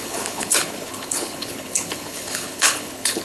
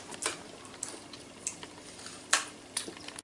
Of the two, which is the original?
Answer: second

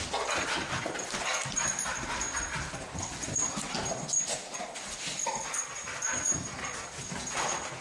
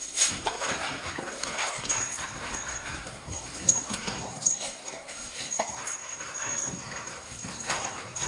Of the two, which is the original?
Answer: first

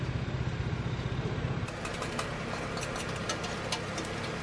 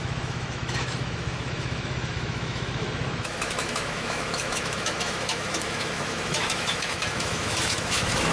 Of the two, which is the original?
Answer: first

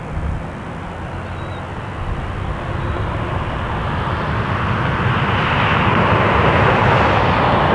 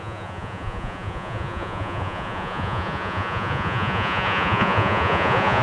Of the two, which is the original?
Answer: first